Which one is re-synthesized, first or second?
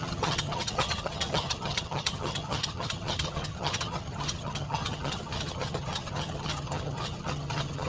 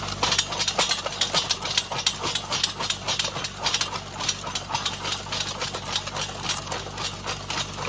first